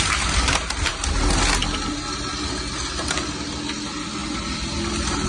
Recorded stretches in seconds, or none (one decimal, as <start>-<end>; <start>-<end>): 0.0-5.3